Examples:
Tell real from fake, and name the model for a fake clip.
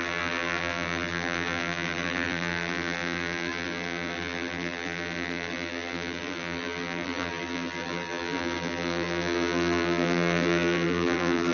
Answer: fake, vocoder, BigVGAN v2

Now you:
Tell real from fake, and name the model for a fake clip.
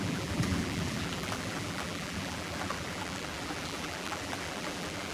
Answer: fake, vocoder, BigVGAN v2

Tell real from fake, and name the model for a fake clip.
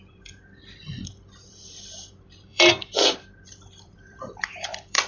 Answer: fake, vocoder, BigVGAN v2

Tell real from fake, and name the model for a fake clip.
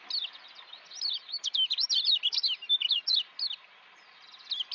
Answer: real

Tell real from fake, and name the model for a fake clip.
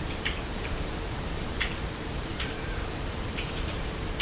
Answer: fake, vocoder, BigVGAN v2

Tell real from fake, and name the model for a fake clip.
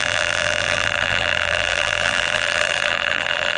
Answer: fake, vocoder, BigVGAN v2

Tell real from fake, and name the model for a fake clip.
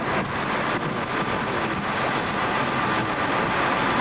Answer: real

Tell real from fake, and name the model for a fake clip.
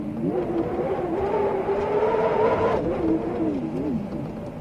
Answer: real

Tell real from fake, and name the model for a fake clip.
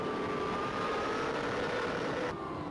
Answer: fake, vocoder, BigVGAN v2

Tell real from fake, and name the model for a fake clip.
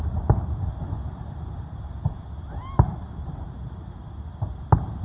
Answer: fake, vocoder, BigVGAN v2